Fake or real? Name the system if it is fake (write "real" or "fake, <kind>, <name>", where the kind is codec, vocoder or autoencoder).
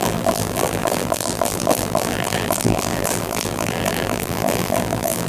fake, vocoder, BigVGAN v2